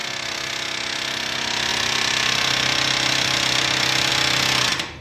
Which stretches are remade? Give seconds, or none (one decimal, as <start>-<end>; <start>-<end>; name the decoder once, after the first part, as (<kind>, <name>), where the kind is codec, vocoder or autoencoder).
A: none